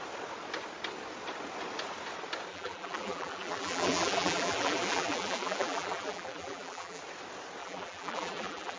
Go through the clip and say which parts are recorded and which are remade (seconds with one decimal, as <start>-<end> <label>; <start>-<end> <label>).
0.0-2.5 recorded; 2.5-7.0 remade; 7.0-7.6 recorded; 7.6-8.8 remade